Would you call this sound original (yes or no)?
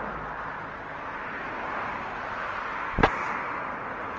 yes